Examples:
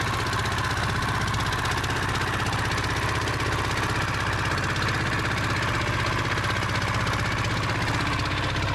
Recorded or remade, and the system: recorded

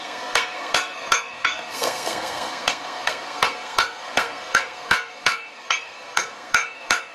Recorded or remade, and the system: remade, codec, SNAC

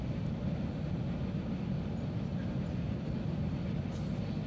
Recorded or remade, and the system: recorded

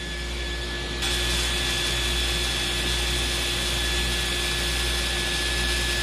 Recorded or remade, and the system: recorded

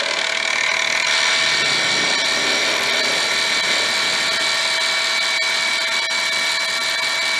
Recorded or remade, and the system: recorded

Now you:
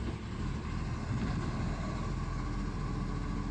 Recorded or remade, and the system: recorded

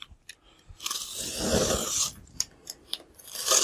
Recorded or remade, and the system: recorded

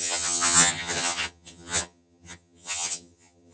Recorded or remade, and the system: remade, vocoder, HiFi-GAN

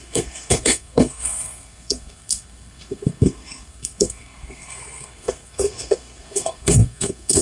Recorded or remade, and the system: remade, codec, SNAC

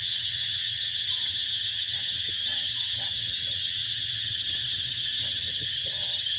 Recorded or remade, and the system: remade, vocoder, HiFi-GAN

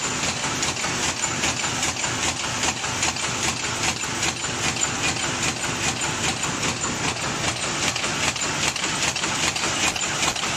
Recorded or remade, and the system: recorded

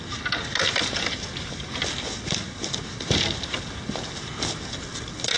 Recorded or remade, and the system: recorded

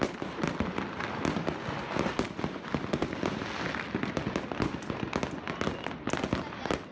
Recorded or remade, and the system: recorded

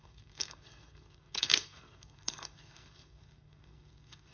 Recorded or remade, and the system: remade, codec, SNAC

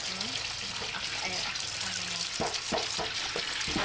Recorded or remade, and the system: recorded